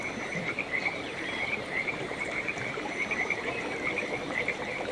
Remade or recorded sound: remade